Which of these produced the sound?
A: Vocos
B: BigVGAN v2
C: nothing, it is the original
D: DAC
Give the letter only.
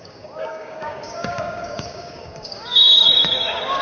D